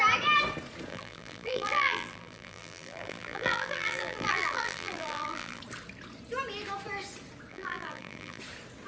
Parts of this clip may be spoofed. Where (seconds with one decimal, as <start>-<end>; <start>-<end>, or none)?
0.9-5.6; 7.5-8.4